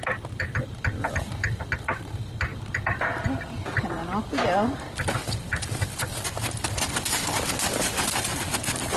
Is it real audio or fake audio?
real